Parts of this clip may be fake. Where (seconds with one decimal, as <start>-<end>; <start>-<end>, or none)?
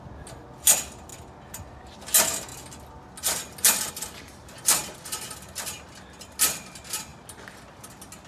none